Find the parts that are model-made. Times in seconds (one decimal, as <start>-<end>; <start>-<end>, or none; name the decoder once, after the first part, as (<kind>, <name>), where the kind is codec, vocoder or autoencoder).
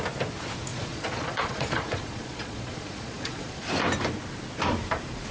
0.7-3.7 (vocoder, Vocos)